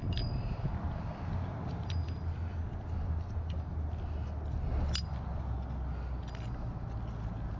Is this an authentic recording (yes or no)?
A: yes